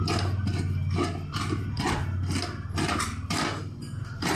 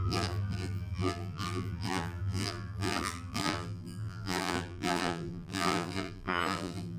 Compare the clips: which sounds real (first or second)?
first